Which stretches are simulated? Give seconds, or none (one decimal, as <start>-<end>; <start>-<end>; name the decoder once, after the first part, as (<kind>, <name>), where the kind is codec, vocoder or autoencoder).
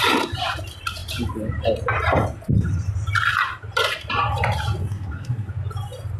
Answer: 4.8-5.5 (codec, SNAC)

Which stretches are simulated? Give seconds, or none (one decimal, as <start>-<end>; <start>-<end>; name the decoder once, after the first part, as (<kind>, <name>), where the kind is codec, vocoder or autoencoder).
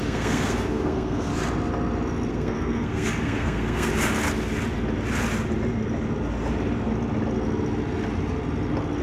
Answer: 0.0-1.3 (codec, SNAC); 2.3-3.9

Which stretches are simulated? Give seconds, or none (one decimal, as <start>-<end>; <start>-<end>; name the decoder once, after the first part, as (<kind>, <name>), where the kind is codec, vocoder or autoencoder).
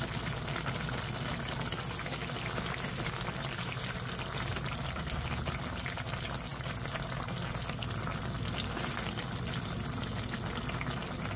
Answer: none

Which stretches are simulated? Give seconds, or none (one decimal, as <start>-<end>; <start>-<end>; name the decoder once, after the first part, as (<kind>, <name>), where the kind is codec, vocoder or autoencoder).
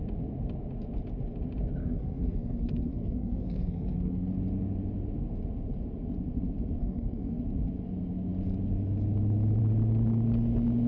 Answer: 1.8-4.3 (codec, SNAC); 6.8-7.4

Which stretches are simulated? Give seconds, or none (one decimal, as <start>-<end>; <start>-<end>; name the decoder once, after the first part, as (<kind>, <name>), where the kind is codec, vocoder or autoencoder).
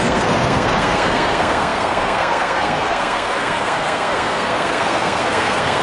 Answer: 0.0-5.8 (codec, SNAC)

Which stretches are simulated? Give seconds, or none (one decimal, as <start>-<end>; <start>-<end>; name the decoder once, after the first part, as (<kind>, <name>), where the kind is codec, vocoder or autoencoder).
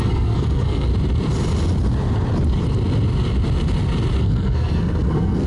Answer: 0.0-0.9 (codec, SNAC); 4.2-5.5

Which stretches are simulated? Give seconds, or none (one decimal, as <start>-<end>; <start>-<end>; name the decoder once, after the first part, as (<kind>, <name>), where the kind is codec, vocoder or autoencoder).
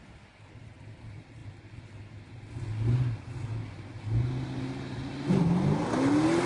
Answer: none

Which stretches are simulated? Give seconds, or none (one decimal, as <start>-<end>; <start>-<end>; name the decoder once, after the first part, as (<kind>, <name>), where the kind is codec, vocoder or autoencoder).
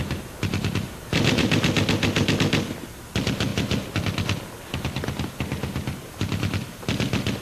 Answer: none